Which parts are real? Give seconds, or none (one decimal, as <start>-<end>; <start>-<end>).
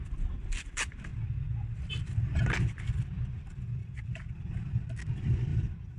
0.0-5.5